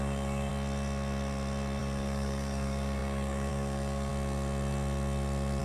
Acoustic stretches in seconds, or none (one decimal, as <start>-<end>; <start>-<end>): 0.5-1.8; 4.1-5.6